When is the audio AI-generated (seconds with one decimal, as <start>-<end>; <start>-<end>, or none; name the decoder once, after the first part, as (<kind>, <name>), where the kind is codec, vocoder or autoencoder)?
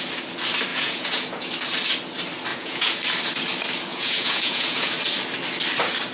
0.7-1.5 (vocoder, Vocos); 2.5-3.0; 3.9-4.9